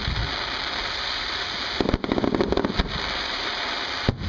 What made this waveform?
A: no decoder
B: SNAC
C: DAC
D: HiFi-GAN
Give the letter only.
A